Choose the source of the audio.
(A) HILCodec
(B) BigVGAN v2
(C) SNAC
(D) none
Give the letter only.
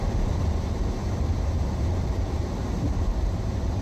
B